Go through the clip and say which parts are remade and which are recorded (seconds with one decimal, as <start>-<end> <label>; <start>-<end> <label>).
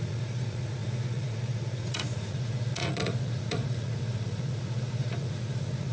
0.0-5.9 remade